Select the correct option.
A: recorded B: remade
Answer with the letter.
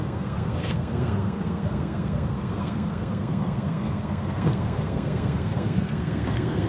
B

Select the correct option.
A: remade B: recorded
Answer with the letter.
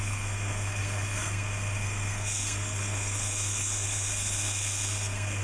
A